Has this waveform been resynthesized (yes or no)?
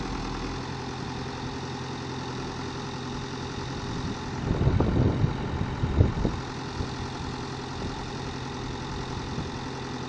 no